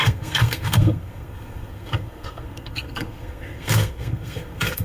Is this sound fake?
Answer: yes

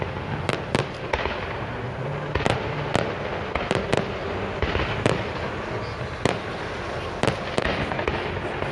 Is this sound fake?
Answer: no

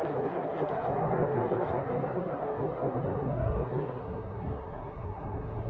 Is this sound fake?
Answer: yes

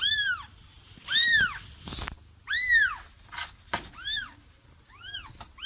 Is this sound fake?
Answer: no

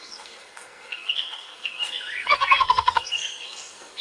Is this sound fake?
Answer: yes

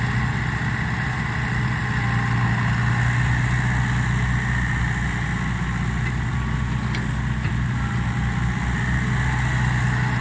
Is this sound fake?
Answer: no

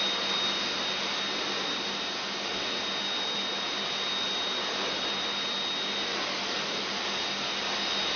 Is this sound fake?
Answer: no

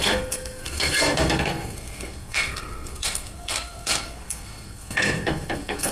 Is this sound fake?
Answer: yes